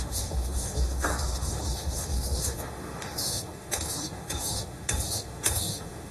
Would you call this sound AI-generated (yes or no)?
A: yes